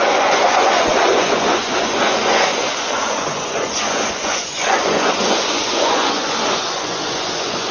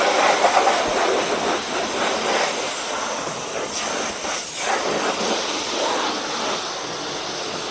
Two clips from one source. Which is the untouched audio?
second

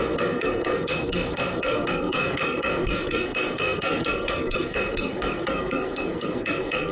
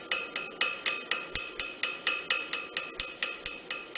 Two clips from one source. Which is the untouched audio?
second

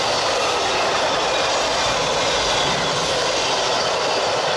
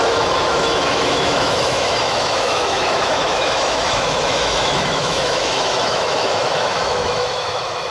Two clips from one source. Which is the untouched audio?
first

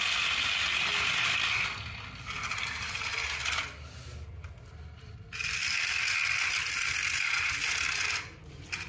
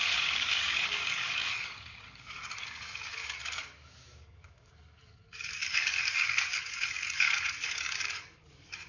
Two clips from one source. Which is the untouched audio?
first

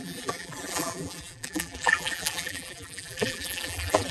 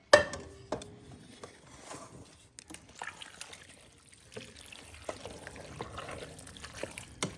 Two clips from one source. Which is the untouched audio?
second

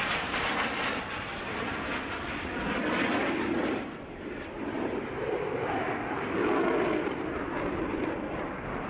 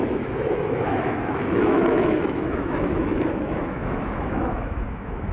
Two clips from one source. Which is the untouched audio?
first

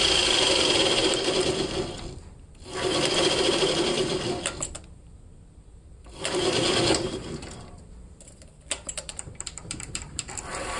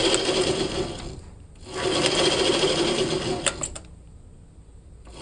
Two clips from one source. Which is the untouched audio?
second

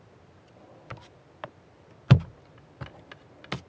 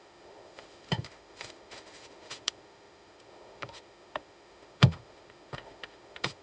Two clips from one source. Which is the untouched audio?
first